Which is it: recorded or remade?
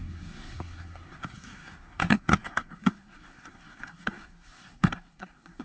remade